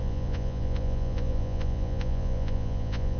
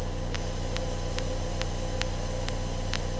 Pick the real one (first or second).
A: second